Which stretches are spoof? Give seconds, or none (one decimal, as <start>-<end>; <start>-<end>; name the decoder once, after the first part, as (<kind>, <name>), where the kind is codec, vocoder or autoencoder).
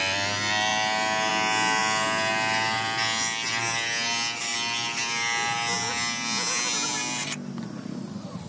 none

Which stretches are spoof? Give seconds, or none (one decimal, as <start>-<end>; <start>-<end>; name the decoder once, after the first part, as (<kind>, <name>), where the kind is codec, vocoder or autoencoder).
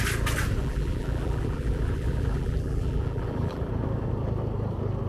0.6-3.7 (vocoder, BigVGAN v2)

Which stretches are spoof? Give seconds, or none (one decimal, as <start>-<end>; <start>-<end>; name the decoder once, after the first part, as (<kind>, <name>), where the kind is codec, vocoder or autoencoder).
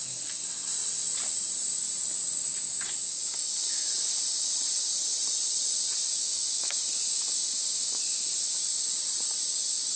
2.5-3.9 (autoencoder, DAC-VAE); 6.1-8.0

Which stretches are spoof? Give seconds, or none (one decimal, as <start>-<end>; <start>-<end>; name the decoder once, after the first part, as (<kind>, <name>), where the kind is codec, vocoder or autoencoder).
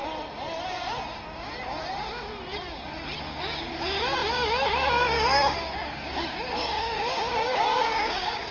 3.2-8.5 (codec, DAC)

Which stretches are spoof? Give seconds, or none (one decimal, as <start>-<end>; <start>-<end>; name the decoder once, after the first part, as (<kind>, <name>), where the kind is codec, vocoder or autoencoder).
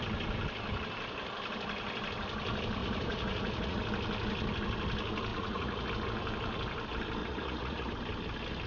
2.8-3.8 (vocoder, Vocos); 5.3-5.9; 7.2-7.9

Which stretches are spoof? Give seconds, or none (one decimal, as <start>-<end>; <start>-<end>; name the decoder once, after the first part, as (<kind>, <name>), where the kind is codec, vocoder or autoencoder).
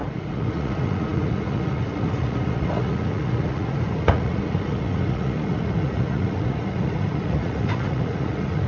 0.0-8.7 (vocoder, Vocos)